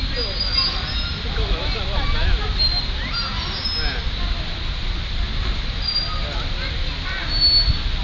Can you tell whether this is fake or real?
real